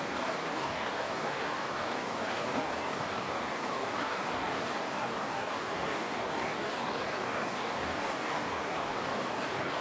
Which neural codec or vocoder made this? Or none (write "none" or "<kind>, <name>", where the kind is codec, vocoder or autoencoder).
codec, DAC